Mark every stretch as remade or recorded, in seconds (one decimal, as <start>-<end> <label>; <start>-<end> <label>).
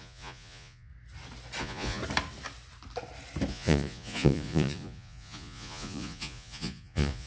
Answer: 0.0-0.9 remade; 0.9-1.6 recorded; 1.6-2.0 remade; 2.0-3.5 recorded; 3.5-7.3 remade